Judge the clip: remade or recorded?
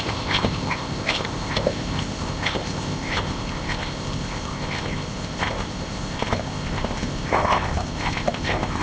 remade